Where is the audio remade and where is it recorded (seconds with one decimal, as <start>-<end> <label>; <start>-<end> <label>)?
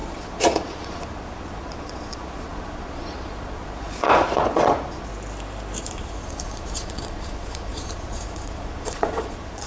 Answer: 0.0-5.1 remade; 5.1-5.8 recorded; 5.8-9.7 remade